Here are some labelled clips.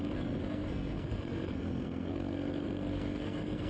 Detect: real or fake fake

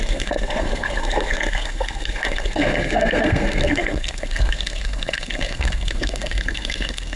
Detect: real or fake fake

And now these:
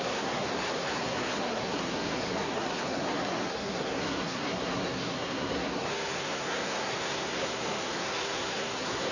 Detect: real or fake fake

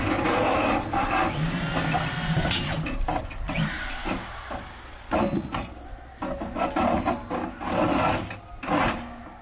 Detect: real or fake real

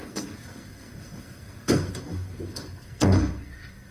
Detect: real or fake fake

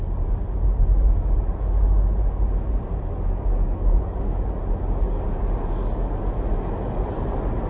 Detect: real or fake real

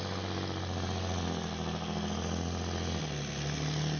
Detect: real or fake real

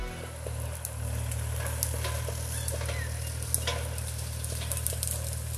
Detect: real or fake real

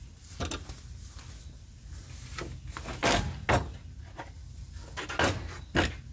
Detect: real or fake real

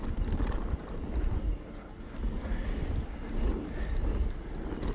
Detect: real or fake real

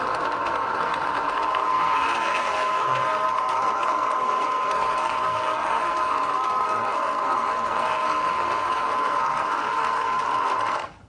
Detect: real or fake fake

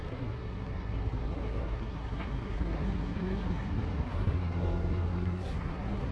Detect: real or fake fake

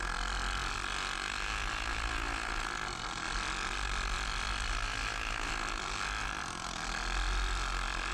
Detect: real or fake real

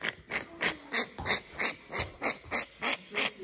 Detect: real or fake real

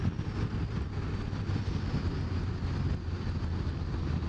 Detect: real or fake real